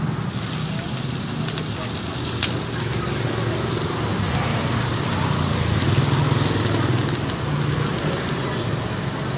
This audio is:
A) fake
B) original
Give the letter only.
B